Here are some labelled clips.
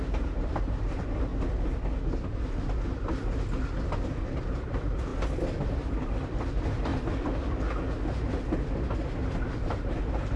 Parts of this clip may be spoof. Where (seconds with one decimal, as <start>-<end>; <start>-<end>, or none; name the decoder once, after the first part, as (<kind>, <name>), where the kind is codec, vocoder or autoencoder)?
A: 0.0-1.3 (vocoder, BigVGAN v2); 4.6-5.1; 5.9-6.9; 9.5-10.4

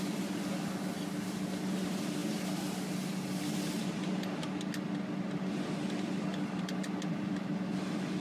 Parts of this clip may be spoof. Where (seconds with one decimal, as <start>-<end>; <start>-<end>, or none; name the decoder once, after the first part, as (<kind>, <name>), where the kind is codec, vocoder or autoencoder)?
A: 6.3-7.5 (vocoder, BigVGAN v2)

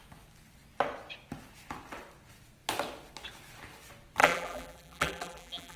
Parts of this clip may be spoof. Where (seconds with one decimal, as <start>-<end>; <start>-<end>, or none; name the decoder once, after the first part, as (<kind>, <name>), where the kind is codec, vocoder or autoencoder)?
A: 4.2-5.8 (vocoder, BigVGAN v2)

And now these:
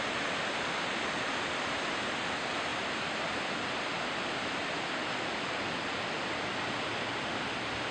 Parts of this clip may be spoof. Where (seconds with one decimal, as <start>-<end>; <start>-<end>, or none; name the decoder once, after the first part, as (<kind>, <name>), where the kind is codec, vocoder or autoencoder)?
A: 2.7-4.8 (vocoder, BigVGAN v2)

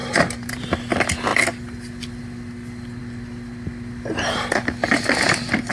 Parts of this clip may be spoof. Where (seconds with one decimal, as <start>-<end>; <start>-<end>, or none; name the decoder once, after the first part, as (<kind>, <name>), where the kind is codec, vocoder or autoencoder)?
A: 0.0-0.6 (vocoder, BigVGAN v2)

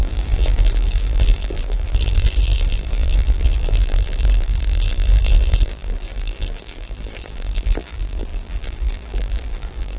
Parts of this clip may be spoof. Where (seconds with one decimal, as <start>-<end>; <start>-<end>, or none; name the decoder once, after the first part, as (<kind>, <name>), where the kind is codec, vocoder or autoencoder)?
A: 0.0-10.0 (vocoder, BigVGAN v2)